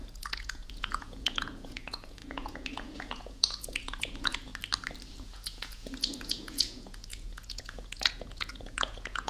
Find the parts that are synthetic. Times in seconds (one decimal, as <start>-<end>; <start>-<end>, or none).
0.0-4.5; 5.2-9.3